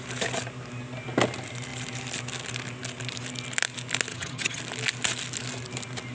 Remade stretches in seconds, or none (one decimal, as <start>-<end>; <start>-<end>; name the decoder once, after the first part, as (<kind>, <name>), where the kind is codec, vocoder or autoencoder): 4.1-4.6 (vocoder, HiFi-GAN)